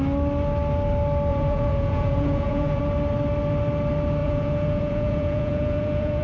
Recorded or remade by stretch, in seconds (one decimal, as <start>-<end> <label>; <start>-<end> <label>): 0.0-1.3 recorded; 1.3-2.8 remade; 2.8-4.2 recorded; 4.2-6.2 remade

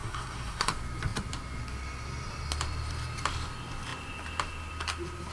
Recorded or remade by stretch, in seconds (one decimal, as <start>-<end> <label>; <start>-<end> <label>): 0.0-0.7 remade; 0.7-5.3 recorded

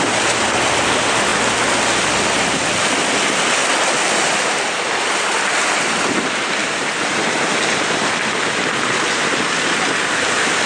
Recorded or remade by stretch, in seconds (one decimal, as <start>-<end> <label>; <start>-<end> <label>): 0.0-6.6 recorded; 6.6-7.5 remade; 7.5-10.7 recorded